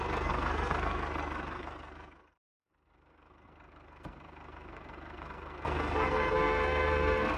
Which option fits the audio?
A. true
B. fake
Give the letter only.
B